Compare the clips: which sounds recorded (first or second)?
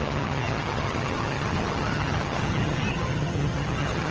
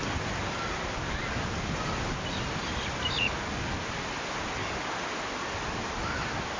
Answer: second